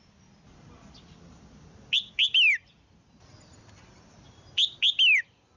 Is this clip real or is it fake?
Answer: real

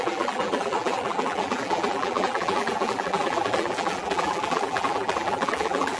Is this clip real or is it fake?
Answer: fake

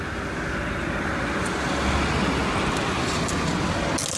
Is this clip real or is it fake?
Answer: real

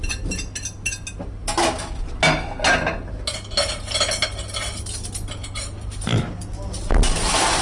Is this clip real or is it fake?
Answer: real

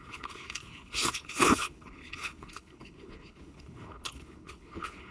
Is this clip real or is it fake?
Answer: fake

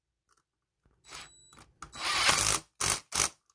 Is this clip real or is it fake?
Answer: real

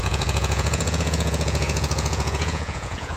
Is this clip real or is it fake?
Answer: fake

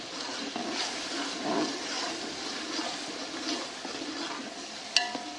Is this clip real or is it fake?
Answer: real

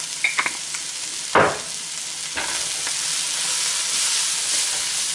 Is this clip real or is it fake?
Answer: real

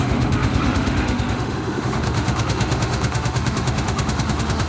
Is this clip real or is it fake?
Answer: fake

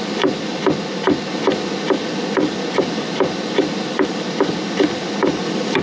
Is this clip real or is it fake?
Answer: real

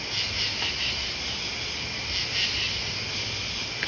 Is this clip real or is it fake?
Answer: real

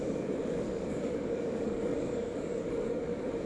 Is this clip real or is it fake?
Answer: fake